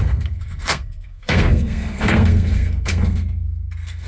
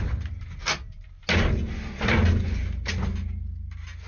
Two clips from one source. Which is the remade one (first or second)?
first